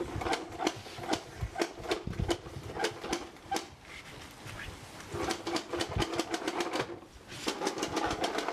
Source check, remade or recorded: recorded